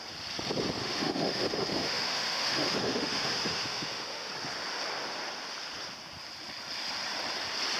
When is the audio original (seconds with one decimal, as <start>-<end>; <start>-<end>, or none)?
0.0-0.8; 4.3-7.8